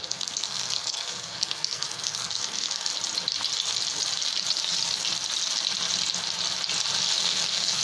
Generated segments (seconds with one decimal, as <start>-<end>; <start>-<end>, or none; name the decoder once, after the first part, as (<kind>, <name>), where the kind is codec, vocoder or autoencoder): 0.0-2.9 (codec, SNAC); 7.2-7.8